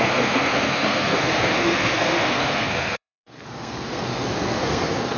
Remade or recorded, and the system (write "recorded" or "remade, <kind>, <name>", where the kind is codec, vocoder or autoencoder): remade, codec, SNAC